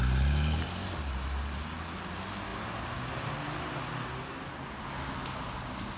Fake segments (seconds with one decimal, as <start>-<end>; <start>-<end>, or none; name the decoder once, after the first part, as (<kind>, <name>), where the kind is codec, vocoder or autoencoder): none